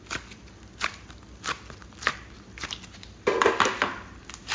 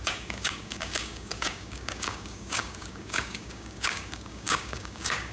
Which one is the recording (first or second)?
first